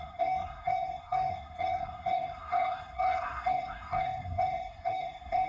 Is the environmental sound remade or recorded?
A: remade